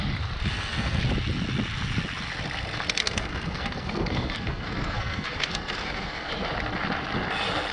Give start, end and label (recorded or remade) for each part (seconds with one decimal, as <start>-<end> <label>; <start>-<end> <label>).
0.0-0.5 recorded; 0.5-1.0 remade; 1.0-3.0 recorded; 3.0-6.3 remade; 6.3-7.7 recorded